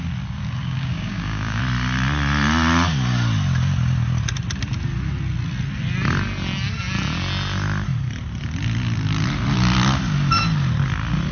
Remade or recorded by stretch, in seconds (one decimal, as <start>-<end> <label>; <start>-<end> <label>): 0.0-0.6 recorded; 0.6-1.6 remade; 1.6-11.3 recorded